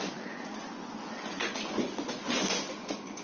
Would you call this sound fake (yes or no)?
yes